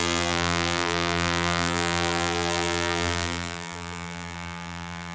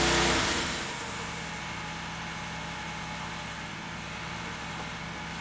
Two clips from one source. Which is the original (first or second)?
second